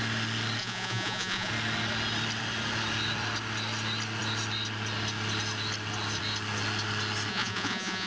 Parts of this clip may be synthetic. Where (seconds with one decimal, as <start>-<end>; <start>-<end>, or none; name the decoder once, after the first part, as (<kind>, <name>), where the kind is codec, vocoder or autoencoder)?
0.6-1.5 (vocoder, Vocos); 7.3-8.1